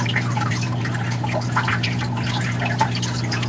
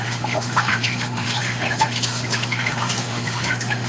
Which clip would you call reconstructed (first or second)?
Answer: second